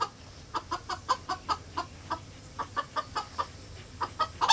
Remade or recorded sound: recorded